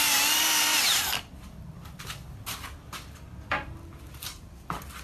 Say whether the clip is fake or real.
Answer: real